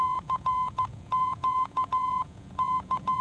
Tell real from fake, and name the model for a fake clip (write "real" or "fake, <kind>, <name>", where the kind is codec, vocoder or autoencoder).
fake, vocoder, Vocos